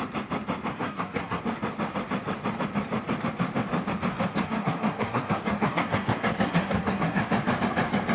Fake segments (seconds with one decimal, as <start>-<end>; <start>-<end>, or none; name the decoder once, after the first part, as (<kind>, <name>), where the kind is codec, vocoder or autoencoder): 0.7-1.4 (codec, SNAC); 4.3-7.2